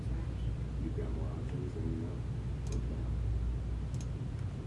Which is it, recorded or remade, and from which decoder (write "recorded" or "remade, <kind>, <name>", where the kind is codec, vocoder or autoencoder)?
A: recorded